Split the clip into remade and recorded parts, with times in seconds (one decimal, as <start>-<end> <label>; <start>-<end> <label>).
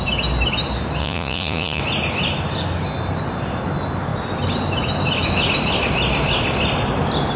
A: 0.0-1.0 recorded; 1.0-1.8 remade; 1.8-7.4 recorded